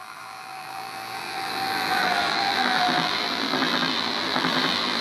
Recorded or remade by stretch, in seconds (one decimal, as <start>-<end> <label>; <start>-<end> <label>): 0.0-5.0 remade